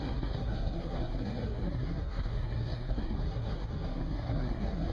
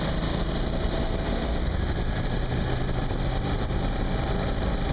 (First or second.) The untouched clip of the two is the second